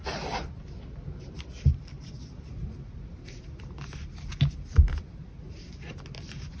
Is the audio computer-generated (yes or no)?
no